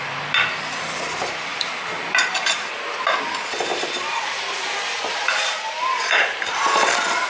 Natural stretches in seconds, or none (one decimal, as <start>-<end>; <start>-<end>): 0.0-1.5; 2.7-3.7; 4.3-7.3

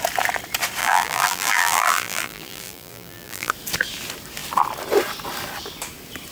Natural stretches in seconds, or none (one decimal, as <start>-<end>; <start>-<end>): 0.0-0.8; 3.5-6.3

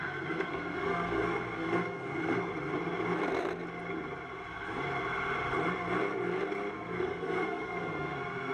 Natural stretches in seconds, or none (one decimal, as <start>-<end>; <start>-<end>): 2.5-6.7

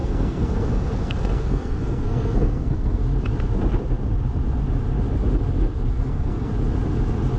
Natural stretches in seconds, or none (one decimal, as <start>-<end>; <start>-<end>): 3.0-5.9; 6.5-7.4